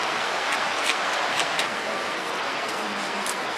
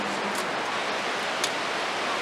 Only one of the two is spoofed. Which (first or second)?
first